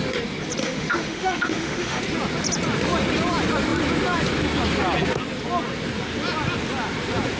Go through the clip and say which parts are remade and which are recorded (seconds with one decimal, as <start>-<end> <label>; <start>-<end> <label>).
0.0-0.6 recorded; 0.6-2.0 remade; 2.0-7.4 recorded